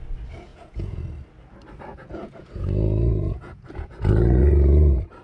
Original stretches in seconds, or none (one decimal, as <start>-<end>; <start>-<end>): 0.0-0.5; 1.0-1.9; 4.0-5.2